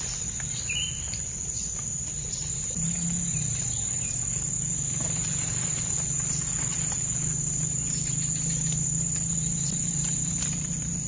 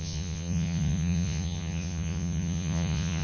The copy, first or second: second